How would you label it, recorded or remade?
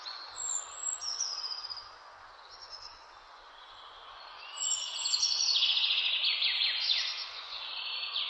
remade